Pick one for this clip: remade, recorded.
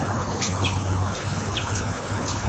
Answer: remade